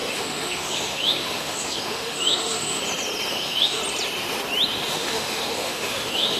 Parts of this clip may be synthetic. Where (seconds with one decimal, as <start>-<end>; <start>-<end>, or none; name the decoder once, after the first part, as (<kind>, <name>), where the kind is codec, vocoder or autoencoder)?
0.0-2.8 (autoencoder, DAC-VAE); 3.3-3.8; 4.9-6.4